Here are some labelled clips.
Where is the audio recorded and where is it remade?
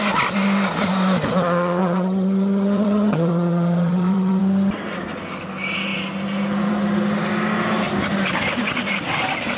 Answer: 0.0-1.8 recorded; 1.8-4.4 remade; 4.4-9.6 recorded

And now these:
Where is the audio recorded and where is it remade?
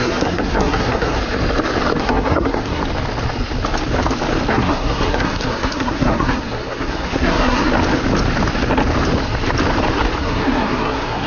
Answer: 0.0-1.2 remade; 1.2-2.0 recorded; 2.0-2.8 remade; 2.8-4.5 recorded; 4.5-7.7 remade; 7.7-10.2 recorded; 10.2-11.3 remade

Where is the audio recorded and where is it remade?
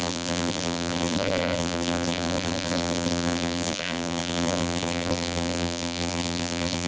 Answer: 0.0-6.9 remade